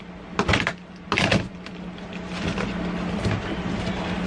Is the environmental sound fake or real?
real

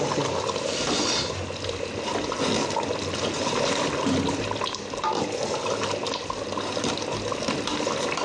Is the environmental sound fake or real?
real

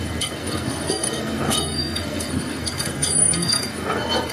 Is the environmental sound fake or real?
fake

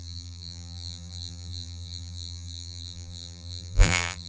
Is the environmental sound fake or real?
fake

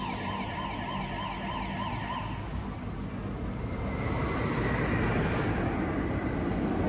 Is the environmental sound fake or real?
real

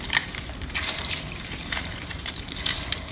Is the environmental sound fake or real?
fake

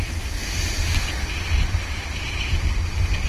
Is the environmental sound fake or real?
real